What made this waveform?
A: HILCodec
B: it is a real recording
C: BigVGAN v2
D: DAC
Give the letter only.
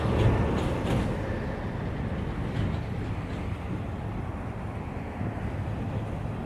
B